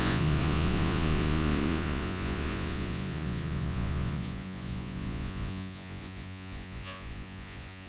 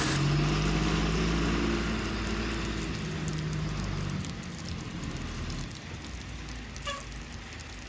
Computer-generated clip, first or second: first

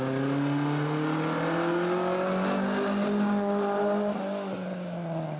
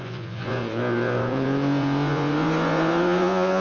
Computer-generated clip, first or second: second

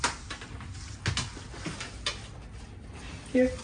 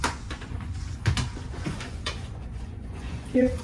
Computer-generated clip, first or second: second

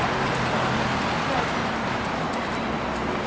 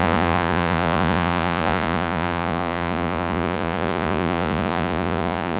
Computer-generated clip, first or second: second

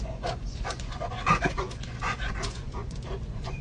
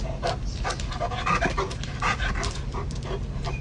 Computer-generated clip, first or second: first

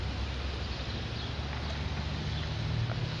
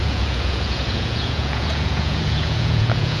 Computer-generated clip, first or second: second